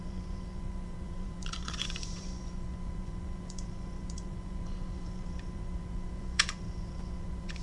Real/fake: fake